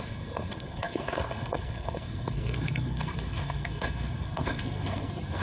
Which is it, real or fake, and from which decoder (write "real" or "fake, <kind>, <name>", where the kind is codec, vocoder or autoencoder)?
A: fake, codec, SNAC